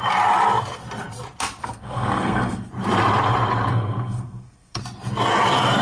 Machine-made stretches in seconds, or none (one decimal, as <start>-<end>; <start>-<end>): 1.6-2.7; 3.7-4.8